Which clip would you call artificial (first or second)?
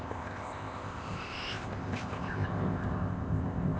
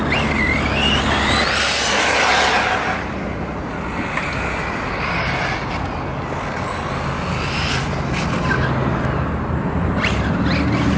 first